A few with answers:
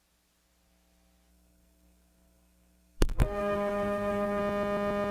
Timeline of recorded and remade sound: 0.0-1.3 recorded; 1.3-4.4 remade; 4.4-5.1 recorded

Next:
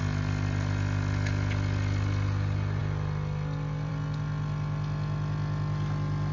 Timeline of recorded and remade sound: 0.0-6.3 recorded

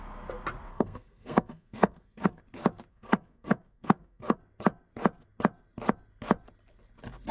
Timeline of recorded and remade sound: 0.0-0.7 recorded; 0.7-2.4 remade; 2.4-2.9 recorded; 2.9-4.4 remade; 4.4-7.3 recorded

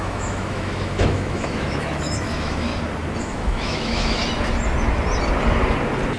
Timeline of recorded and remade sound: 0.0-2.7 remade; 2.7-3.2 recorded; 3.2-4.2 remade; 4.2-6.2 recorded

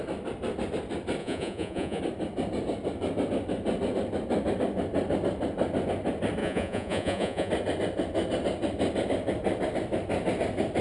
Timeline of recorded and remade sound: 0.0-1.2 recorded; 1.2-2.0 remade; 2.0-6.4 recorded; 6.4-7.5 remade; 7.5-10.8 recorded

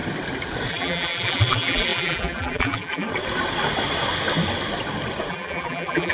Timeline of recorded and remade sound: 0.0-0.7 recorded; 0.7-3.1 remade; 3.1-5.3 recorded; 5.3-6.1 remade